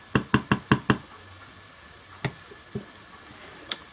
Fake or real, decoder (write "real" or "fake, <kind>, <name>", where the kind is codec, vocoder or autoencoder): real